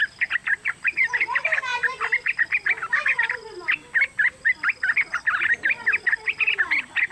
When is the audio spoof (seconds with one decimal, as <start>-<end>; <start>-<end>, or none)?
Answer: none